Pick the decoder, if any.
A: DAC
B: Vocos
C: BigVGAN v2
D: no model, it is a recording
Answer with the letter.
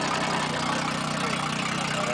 D